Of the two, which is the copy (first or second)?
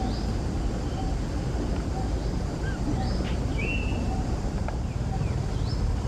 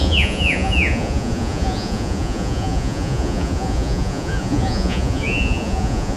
second